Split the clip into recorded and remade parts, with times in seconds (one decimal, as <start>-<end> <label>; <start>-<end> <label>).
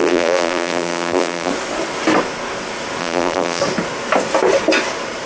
0.0-1.5 remade; 1.5-3.0 recorded; 3.0-3.6 remade; 3.6-5.3 recorded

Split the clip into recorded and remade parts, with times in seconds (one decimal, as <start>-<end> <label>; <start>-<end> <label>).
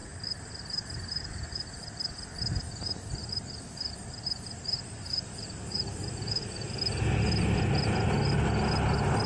0.0-1.7 remade; 1.7-3.2 recorded; 3.2-6.7 remade; 6.7-9.3 recorded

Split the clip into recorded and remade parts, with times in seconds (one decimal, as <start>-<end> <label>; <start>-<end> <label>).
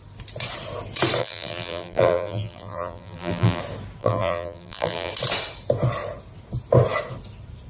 0.0-1.2 recorded; 1.2-3.6 remade; 3.6-4.0 recorded; 4.0-5.1 remade; 5.1-7.7 recorded